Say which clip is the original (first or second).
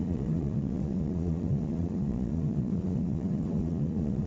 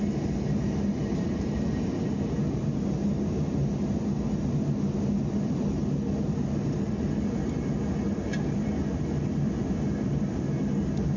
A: second